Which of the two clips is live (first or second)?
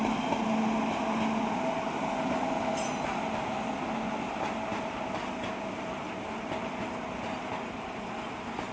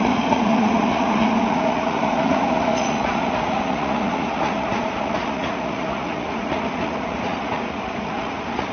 first